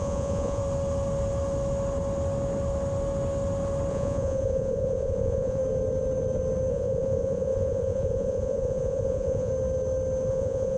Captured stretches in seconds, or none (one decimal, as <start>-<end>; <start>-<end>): 0.6-3.9; 5.6-6.7; 9.5-10.3